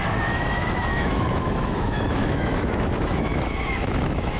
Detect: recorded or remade remade